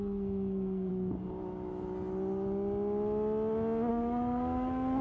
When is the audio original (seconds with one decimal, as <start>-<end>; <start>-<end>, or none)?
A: 0.9-3.9